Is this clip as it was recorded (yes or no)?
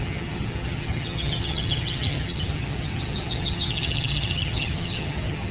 no